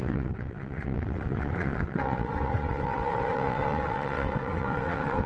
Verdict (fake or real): fake